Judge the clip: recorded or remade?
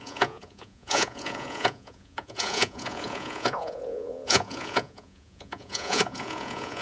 remade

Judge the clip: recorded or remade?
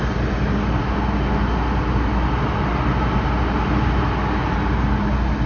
recorded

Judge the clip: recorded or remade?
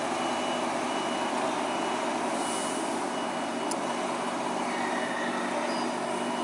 recorded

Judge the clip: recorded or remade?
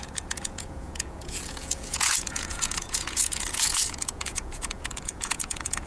remade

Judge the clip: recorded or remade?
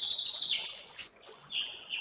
remade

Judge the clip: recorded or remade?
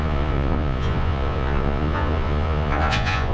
remade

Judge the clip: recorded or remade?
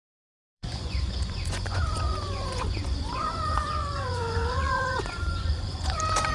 remade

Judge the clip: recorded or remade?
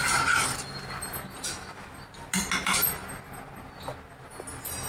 recorded